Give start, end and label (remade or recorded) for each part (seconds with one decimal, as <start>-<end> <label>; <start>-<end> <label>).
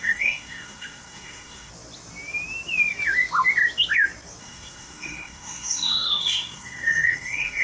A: 0.0-1.7 remade; 1.7-4.4 recorded; 4.4-7.6 remade